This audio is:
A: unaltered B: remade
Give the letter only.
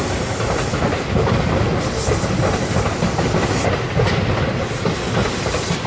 A